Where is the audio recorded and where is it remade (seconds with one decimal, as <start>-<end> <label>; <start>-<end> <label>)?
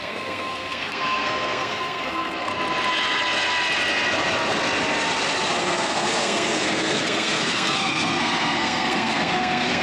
0.0-2.5 remade; 2.5-5.6 recorded; 5.6-9.8 remade